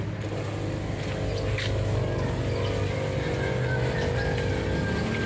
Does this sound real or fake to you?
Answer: real